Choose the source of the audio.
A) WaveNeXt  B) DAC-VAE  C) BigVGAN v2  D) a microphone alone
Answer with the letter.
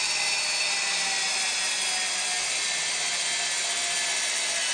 D